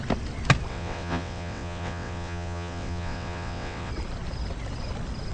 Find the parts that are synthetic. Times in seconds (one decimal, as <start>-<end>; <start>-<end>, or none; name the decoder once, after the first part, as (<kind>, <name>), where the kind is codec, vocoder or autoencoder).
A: 0.7-3.9 (vocoder, WaveNeXt)